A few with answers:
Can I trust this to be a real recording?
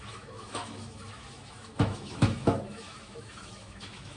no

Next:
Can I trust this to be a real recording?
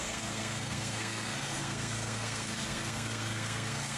no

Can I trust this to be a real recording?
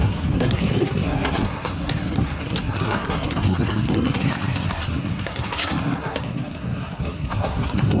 no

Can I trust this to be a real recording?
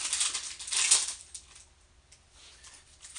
yes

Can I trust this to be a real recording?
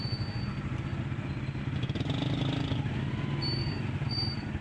yes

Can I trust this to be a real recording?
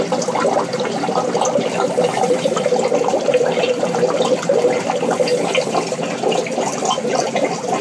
yes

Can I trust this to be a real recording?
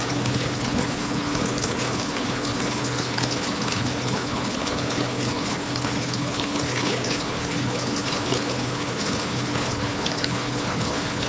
no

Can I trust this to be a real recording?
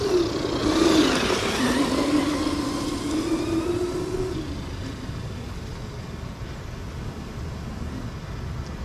yes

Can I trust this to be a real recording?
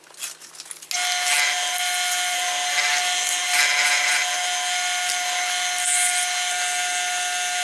yes